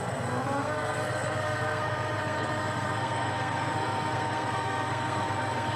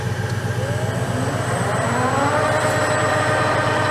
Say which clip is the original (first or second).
second